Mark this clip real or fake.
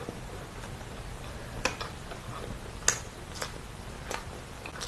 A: real